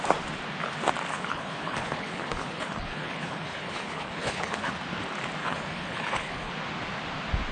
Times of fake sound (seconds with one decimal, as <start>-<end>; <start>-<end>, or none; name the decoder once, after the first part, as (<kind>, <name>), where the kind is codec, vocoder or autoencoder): 1.1-4.7 (codec, HILCodec); 5.4-6.5